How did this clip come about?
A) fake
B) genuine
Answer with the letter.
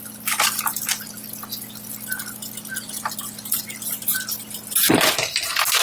B